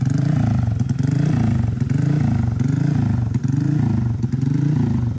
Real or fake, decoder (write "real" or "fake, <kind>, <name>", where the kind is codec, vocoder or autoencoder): real